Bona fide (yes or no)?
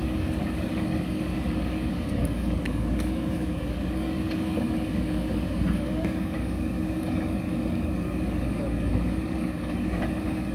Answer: no